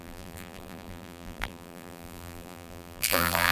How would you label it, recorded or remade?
remade